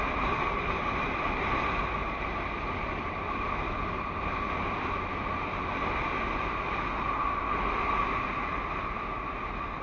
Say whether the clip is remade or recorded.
recorded